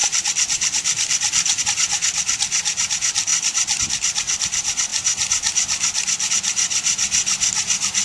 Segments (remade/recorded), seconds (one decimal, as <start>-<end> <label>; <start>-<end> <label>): 0.0-1.6 remade; 1.6-3.3 recorded; 3.3-3.8 remade; 3.8-8.0 recorded